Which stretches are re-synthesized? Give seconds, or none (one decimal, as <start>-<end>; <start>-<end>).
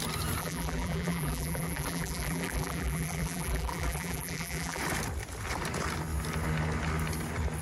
0.4-4.8